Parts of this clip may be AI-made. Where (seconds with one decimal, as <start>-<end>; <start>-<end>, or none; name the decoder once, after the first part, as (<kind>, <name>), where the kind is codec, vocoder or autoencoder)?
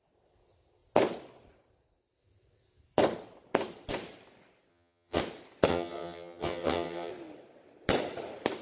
4.7-5.2 (vocoder, HiFi-GAN); 5.7-7.1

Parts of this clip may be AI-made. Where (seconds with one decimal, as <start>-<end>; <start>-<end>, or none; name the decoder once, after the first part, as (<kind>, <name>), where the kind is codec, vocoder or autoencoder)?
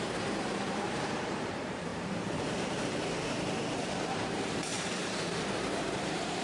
0.0-6.4 (vocoder, BigVGAN v2)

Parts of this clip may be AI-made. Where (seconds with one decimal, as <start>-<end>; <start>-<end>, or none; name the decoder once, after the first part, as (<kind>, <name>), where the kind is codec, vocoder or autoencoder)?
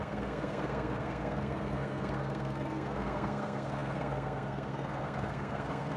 0.0-6.0 (codec, SNAC)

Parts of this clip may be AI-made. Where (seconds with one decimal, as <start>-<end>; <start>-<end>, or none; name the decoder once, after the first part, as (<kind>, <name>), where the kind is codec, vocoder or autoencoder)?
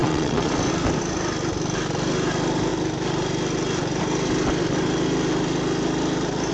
0.0-0.5 (vocoder, WaveNeXt)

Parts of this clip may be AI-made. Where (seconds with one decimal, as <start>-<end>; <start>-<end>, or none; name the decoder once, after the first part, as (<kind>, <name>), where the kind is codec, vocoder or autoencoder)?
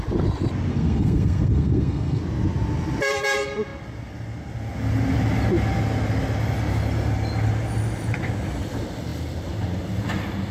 0.7-2.2 (codec, SNAC)